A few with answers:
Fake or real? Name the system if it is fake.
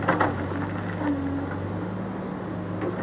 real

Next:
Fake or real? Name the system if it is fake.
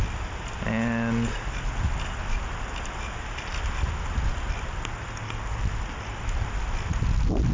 real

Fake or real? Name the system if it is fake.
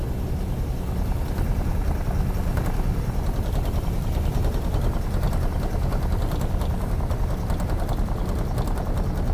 real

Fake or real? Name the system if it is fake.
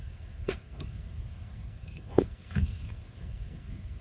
fake, codec, SNAC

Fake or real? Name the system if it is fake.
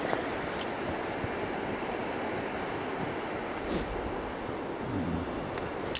real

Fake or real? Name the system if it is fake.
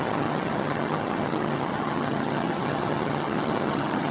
fake, vocoder, HiFi-GAN